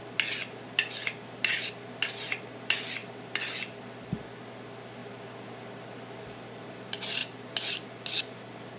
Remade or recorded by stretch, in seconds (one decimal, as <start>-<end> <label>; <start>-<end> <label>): 0.0-8.8 recorded